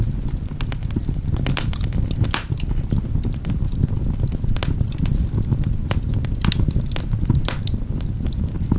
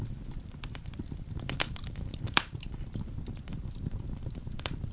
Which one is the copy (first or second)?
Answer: second